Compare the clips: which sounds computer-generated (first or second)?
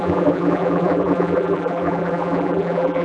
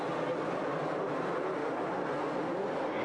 first